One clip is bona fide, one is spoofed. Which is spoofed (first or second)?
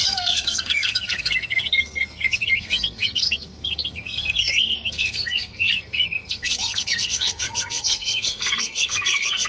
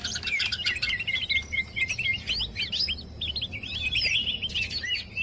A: first